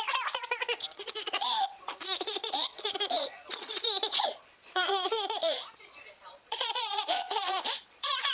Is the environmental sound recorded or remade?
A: remade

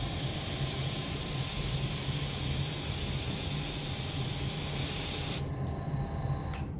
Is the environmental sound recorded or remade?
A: recorded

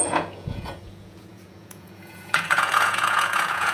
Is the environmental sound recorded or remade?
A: remade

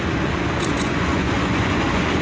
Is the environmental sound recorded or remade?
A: remade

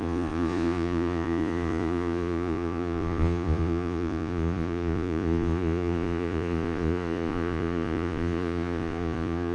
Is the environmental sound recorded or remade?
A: remade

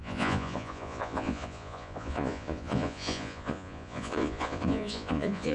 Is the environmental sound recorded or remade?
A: remade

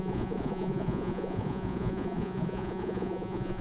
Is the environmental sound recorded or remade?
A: remade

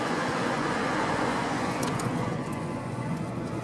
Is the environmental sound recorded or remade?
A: remade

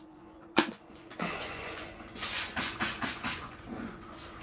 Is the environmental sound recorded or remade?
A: remade